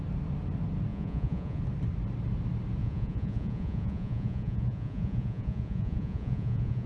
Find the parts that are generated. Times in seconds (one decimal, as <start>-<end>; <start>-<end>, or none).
0.9-1.6; 2.8-6.9

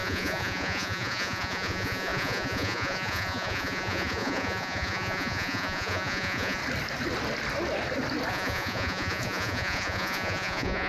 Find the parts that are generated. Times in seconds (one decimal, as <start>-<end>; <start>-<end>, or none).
0.0-6.6; 8.3-10.9

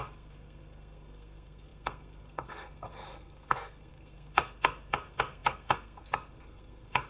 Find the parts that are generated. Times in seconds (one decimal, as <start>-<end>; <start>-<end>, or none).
0.0-7.1

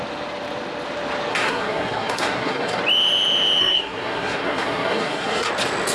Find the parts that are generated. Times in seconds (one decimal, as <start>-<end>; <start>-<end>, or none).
1.3-2.8; 3.6-5.5

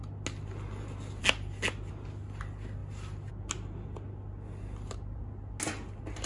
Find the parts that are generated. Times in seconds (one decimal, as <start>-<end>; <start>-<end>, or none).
none

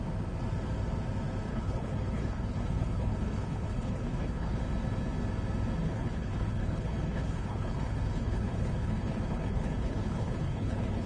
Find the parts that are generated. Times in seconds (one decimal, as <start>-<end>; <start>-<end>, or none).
1.5-4.6; 5.8-11.1